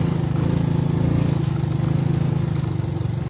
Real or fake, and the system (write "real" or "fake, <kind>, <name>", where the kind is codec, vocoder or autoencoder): real